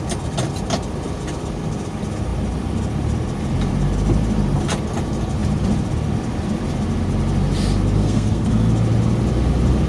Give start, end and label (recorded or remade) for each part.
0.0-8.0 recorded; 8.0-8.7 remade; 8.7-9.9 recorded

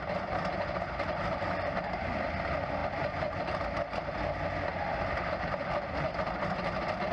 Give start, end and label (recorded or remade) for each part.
0.0-7.1 recorded